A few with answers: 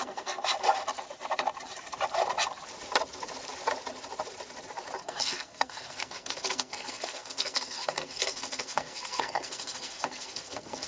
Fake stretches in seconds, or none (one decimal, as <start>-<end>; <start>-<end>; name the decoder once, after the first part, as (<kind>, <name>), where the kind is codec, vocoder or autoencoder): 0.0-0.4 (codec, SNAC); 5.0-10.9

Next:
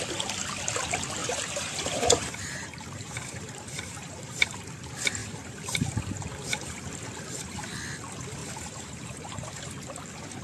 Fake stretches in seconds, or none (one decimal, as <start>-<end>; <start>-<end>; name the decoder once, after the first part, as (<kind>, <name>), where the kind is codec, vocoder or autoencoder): 1.2-4.6 (vocoder, BigVGAN v2); 5.2-5.8; 8.4-9.7

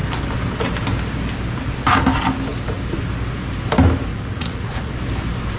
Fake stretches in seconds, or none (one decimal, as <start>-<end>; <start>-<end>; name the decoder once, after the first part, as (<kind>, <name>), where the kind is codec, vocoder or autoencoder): 4.1-4.9 (vocoder, Vocos)